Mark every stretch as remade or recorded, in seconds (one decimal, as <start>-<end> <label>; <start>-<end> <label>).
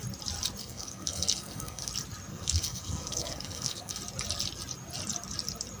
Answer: 0.0-0.6 recorded; 0.6-1.9 remade; 1.9-2.3 recorded; 2.3-4.0 remade; 4.0-5.8 recorded